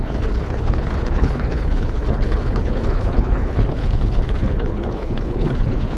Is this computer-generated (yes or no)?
yes